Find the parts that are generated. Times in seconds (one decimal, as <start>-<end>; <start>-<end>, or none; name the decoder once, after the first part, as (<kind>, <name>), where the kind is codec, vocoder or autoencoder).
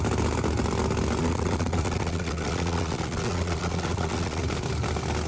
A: 1.2-4.4 (vocoder, Vocos)